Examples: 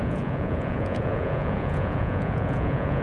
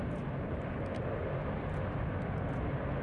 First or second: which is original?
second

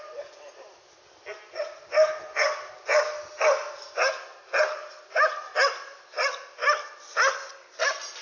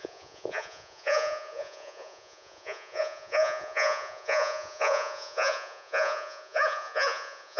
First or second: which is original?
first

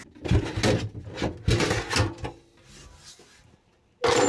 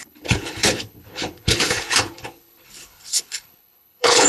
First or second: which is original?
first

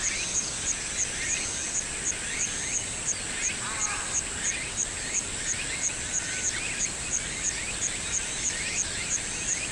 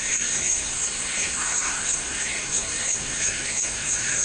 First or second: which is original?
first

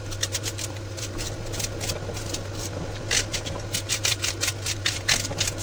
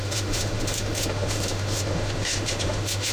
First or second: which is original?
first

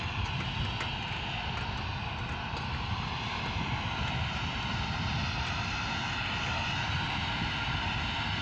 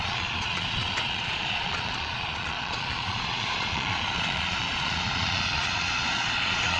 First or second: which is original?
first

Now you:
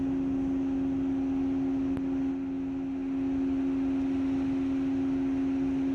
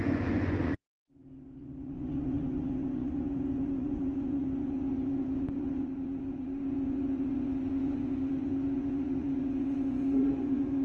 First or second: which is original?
first